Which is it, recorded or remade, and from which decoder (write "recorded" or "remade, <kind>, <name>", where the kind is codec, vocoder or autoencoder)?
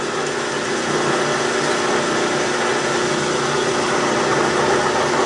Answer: recorded